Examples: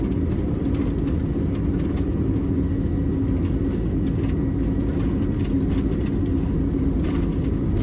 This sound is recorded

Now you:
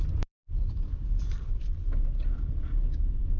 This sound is remade